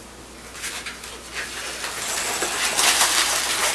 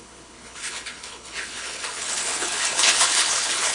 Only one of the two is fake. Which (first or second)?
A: second